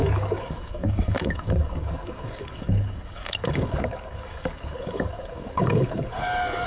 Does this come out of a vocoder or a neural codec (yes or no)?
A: yes